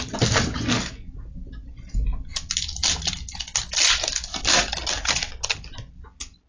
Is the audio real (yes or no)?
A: yes